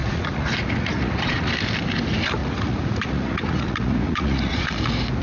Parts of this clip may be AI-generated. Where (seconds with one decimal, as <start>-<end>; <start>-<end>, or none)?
0.0-1.5; 2.4-4.7